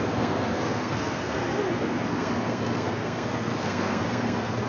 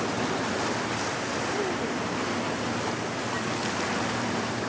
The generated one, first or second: first